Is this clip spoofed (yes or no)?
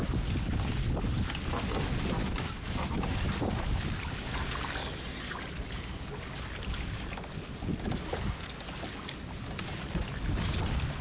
no